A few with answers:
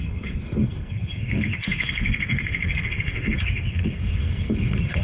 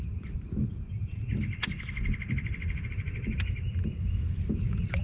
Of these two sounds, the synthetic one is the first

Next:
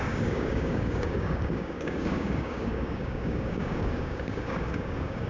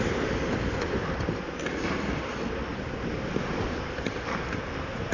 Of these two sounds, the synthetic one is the first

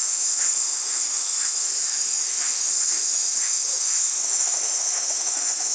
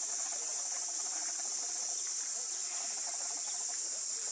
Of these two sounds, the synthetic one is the first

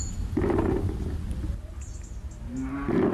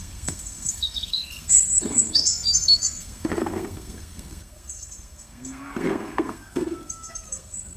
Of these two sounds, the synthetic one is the second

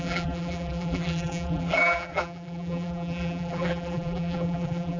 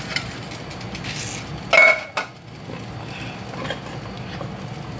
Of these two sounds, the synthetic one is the first